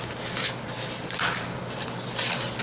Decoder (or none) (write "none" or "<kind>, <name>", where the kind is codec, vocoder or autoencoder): none